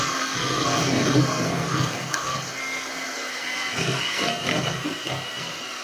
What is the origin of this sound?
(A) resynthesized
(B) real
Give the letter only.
A